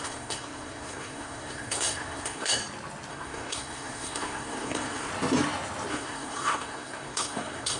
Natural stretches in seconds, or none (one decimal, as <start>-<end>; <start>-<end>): 2.6-3.1; 5.1-5.9